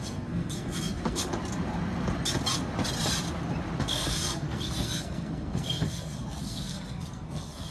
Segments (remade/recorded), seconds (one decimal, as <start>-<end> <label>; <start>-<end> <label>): 0.0-1.2 remade; 1.2-3.8 recorded; 3.8-7.7 remade